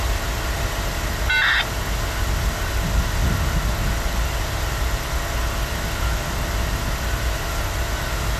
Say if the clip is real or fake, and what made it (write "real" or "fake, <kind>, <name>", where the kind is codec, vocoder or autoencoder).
real